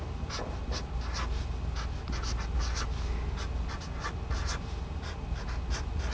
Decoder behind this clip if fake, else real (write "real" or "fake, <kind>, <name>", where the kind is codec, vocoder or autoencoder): real